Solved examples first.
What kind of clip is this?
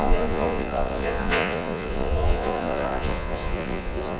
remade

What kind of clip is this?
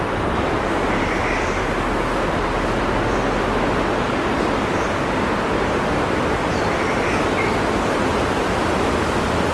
recorded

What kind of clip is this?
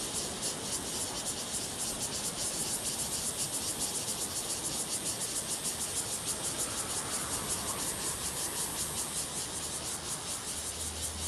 recorded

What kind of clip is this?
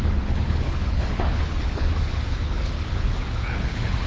remade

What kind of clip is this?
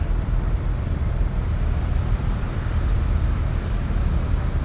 remade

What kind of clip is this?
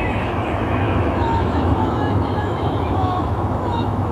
remade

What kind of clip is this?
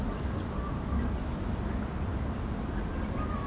recorded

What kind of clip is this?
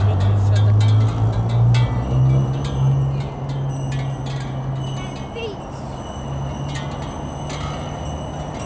recorded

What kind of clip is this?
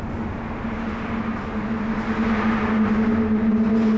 recorded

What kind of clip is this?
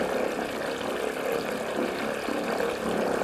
recorded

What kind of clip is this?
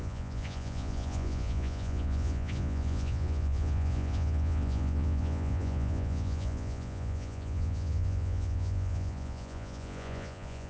remade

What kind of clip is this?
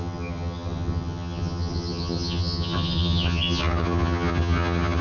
remade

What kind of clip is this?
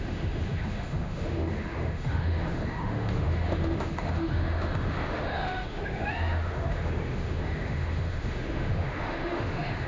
remade